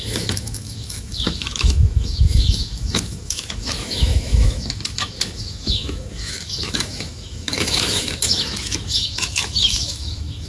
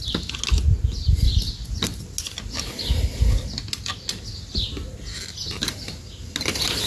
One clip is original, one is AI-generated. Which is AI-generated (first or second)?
first